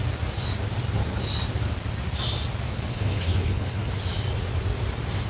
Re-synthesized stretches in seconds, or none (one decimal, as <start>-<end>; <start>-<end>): 2.9-3.9